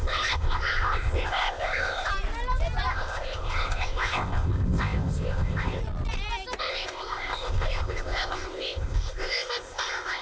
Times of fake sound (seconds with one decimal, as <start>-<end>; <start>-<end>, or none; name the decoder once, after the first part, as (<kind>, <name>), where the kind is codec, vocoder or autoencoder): 0.0-2.1 (codec, ZipCodec); 2.9-5.8; 6.6-10.2